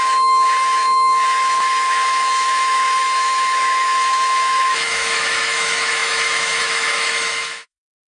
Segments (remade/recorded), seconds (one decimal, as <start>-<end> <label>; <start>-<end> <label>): 0.0-8.1 remade